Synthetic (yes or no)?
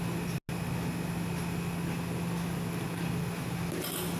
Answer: no